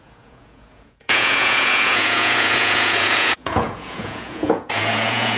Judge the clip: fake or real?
fake